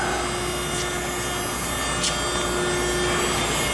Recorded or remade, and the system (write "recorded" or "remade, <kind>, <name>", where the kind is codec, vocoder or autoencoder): recorded